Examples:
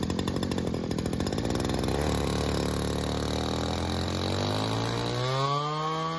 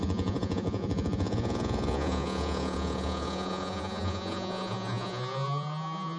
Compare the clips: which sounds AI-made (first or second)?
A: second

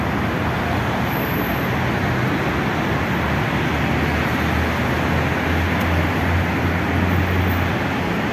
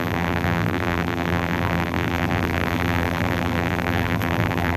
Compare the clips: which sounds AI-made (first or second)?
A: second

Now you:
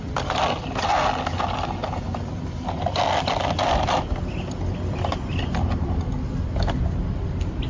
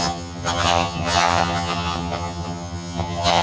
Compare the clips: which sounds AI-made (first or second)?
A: second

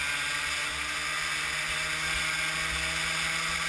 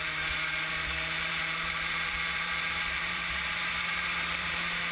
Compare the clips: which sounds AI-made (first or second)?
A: second